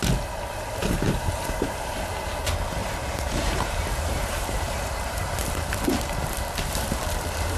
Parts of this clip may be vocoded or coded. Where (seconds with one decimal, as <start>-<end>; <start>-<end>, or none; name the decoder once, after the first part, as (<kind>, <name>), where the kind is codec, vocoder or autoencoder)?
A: 0.8-1.9 (vocoder, BigVGAN v2); 2.8-7.6